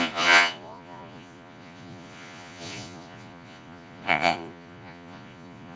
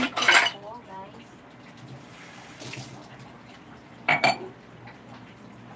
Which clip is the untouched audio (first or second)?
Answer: second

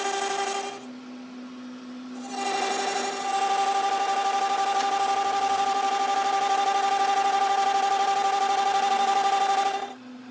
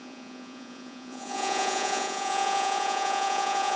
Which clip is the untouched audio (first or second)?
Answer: first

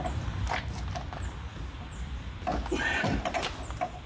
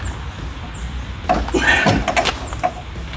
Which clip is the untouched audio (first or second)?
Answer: second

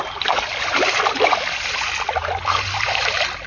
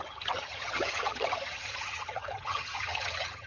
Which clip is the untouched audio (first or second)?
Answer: first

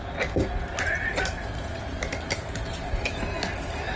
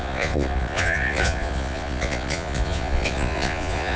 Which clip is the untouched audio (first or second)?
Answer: first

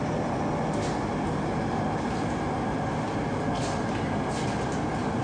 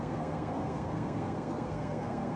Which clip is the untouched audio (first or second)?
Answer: first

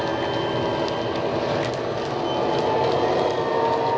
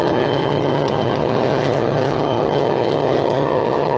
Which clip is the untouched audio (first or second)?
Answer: first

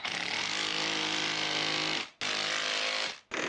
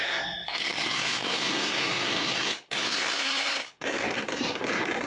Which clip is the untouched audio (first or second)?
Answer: first